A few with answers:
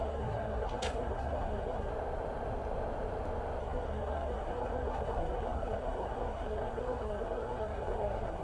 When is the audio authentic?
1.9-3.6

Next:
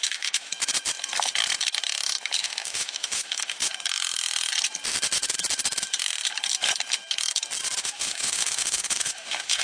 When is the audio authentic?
0.5-2.4; 3.6-7.8